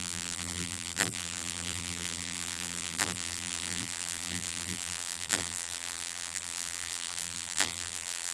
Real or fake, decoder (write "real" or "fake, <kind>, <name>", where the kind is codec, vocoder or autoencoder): fake, vocoder, BigVGAN v2